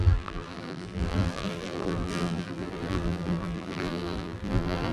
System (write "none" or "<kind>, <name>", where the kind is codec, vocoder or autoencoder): vocoder, BigVGAN v2